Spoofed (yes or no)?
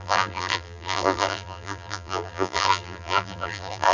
yes